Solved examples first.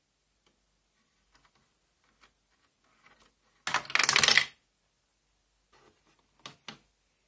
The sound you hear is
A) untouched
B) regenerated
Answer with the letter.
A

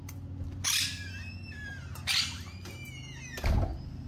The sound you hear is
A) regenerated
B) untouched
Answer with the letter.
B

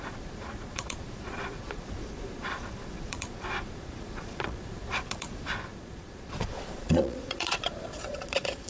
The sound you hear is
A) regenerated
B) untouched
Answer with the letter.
A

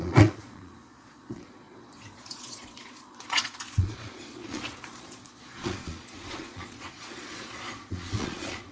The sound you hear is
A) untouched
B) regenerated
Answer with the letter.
B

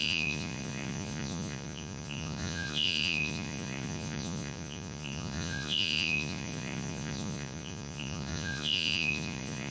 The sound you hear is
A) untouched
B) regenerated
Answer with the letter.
B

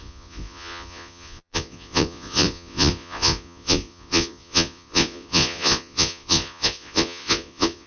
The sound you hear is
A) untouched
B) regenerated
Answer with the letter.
B